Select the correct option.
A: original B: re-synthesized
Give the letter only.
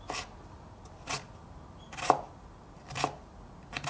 A